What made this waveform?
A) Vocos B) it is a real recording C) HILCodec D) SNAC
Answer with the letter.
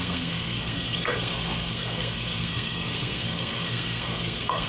D